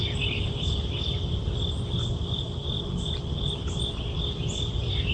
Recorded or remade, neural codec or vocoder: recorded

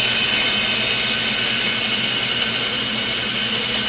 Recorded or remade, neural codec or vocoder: recorded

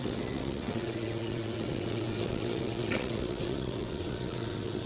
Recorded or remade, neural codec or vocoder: remade, vocoder, WaveNeXt